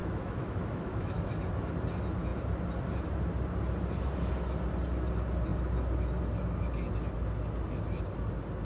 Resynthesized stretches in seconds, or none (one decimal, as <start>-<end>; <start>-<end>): 0.0-1.4